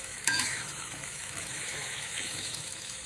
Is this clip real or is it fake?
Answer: fake